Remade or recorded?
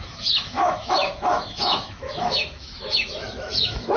remade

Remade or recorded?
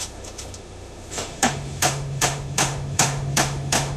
remade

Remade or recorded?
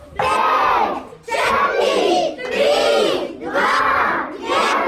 recorded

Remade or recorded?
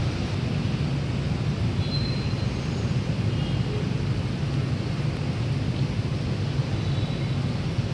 recorded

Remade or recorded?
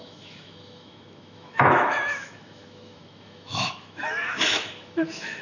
remade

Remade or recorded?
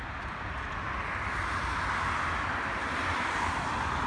recorded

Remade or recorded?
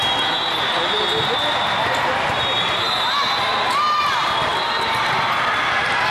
recorded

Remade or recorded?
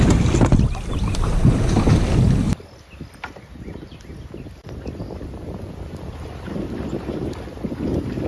recorded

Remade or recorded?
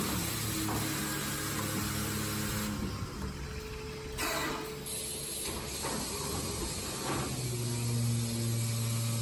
recorded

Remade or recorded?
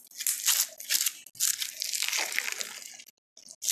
recorded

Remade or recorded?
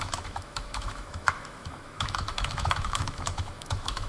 remade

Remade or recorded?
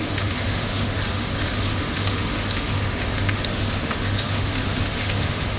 remade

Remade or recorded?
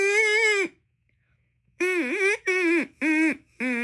remade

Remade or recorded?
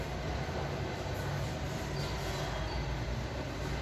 recorded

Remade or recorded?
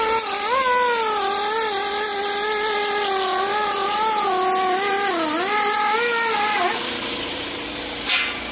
recorded